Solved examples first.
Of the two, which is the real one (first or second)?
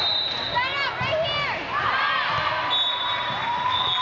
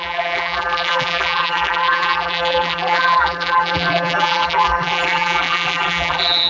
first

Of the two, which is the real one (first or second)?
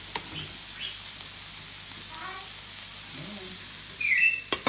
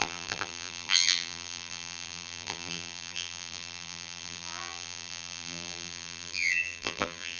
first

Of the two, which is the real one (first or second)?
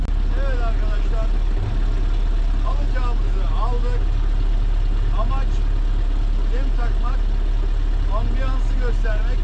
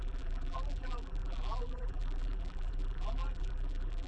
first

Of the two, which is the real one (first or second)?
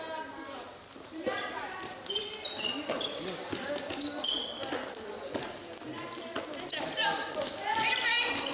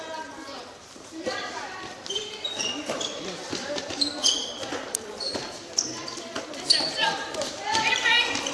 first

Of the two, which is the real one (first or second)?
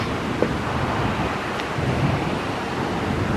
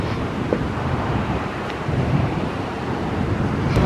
first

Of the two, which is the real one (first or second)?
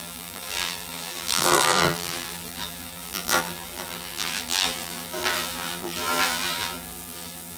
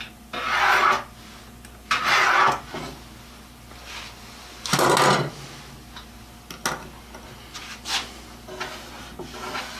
second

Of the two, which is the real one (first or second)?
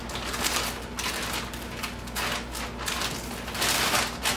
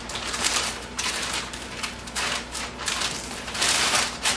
first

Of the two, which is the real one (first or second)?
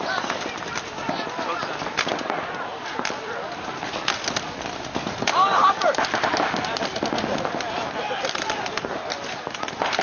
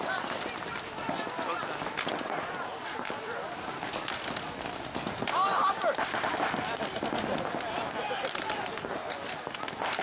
second